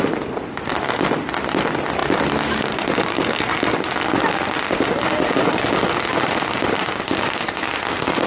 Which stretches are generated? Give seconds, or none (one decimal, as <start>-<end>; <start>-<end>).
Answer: none